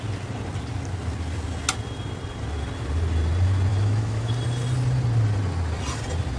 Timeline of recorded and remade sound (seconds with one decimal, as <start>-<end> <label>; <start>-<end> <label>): 0.0-3.7 recorded; 3.7-4.3 remade; 4.3-6.4 recorded